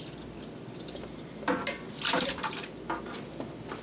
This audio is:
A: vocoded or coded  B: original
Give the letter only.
B